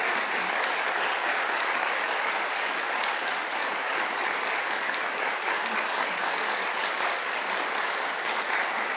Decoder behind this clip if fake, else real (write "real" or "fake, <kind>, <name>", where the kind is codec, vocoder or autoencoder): fake, codec, DAC